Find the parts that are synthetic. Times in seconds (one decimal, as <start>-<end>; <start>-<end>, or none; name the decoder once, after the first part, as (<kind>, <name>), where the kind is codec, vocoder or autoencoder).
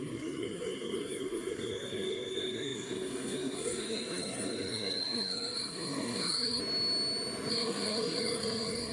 0.0-6.6 (codec, SNAC); 7.5-8.9